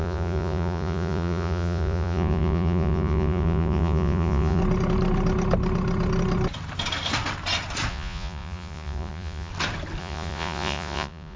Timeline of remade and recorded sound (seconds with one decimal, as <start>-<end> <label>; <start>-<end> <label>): 0.0-4.6 remade; 4.6-7.9 recorded; 7.9-9.5 remade; 9.5-10.0 recorded; 10.0-11.4 remade